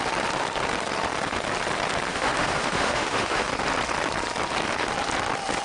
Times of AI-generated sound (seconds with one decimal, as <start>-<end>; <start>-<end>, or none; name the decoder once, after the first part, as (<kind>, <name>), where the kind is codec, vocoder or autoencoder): 2.1-3.5 (autoencoder, DAC-VAE)